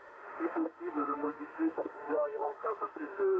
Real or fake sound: fake